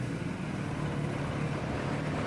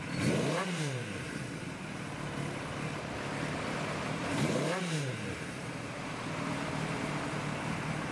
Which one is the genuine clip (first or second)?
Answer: first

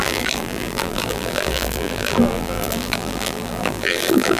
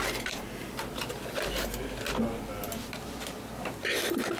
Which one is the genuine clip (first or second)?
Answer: second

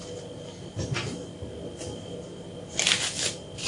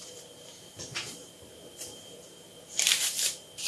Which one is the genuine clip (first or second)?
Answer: first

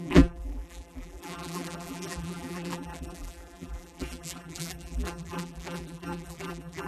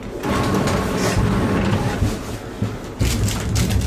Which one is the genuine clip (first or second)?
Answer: second